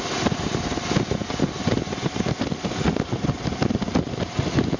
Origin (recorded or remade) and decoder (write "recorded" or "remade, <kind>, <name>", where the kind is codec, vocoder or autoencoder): recorded